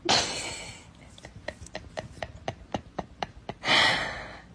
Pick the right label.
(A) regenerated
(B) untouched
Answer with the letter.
B